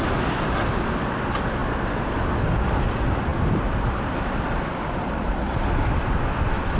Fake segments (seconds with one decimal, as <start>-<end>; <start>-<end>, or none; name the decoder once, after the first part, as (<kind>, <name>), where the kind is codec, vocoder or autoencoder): none